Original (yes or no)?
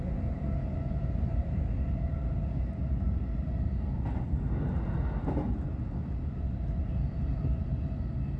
yes